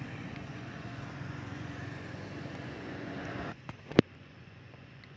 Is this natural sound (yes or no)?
no